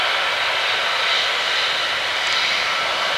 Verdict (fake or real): real